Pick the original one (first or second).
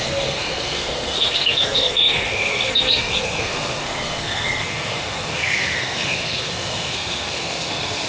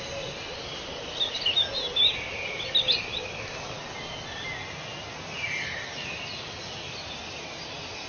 second